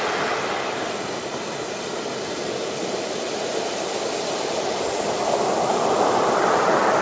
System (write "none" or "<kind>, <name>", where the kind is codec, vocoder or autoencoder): none